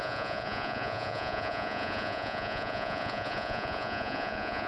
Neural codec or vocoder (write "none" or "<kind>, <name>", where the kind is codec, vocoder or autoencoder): vocoder, Vocos